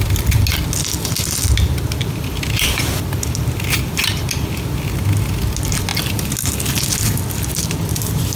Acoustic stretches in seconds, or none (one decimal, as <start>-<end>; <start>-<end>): 0.0-8.4